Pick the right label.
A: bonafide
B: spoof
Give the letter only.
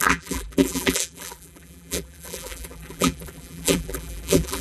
B